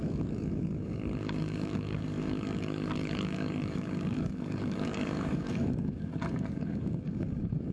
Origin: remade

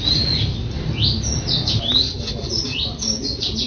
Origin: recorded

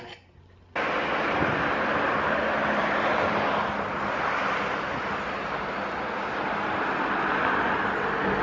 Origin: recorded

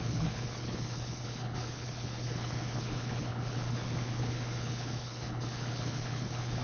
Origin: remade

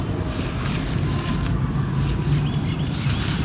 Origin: recorded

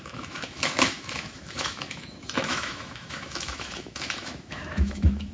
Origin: remade